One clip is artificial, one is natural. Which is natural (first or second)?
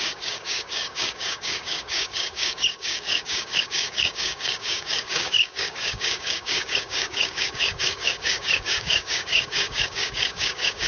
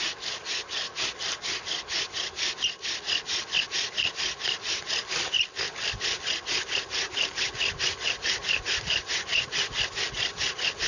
second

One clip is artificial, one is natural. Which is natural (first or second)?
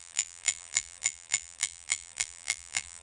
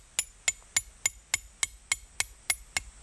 second